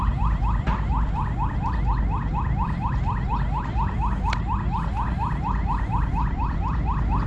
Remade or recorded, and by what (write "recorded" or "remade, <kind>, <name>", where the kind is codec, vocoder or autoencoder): recorded